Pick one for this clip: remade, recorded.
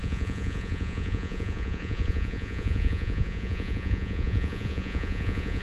remade